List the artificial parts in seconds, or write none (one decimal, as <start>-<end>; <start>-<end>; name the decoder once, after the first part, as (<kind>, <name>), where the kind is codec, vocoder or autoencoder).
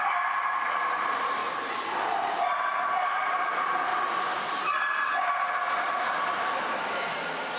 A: 0.0-1.4 (vocoder, BigVGAN v2); 2.0-2.7; 3.4-3.9; 5.5-7.6